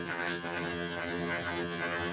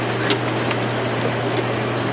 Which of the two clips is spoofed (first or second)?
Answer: first